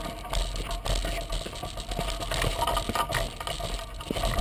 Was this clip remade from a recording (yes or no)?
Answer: no